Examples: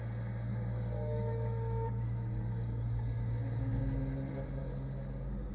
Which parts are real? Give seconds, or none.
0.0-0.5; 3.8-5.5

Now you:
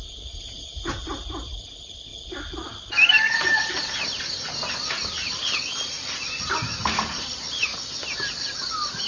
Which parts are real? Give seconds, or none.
0.0-9.1

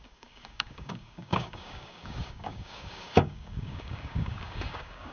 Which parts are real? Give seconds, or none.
none

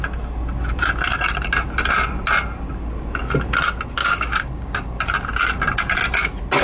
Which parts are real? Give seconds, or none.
0.0-4.0; 5.0-6.6

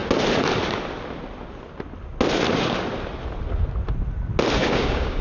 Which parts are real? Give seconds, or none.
0.0-4.6

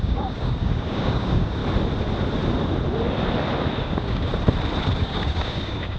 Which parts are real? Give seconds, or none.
1.6-3.8; 4.3-5.0